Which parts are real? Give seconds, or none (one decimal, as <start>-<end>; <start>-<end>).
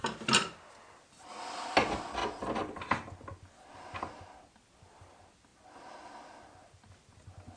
0.0-7.6